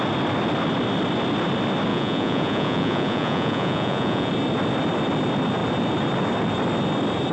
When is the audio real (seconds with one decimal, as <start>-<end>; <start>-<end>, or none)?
0.0-1.9; 4.3-7.3